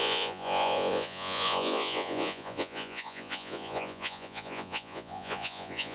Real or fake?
fake